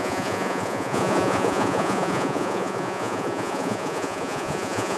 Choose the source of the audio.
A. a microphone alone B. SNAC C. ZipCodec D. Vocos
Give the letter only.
D